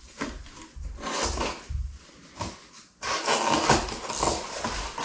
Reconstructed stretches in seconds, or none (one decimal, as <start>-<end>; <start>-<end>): none